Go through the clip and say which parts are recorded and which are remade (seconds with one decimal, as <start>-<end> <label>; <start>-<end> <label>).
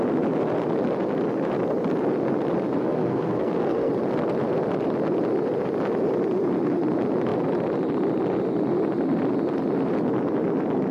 0.0-2.8 recorded; 2.8-3.9 remade; 3.9-10.9 recorded